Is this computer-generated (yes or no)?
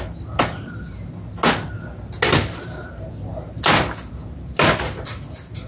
no